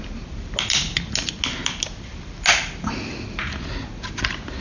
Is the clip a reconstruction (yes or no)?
no